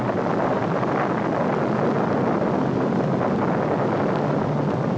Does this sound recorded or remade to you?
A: recorded